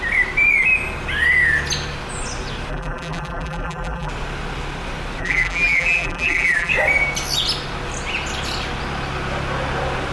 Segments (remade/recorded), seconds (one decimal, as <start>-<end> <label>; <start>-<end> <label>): 0.0-2.7 recorded; 2.7-4.1 remade; 4.1-5.2 recorded; 5.2-6.7 remade; 6.7-10.1 recorded